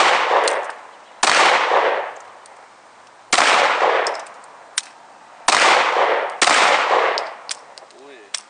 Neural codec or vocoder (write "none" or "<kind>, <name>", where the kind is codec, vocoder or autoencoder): none